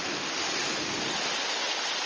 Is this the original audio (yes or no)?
yes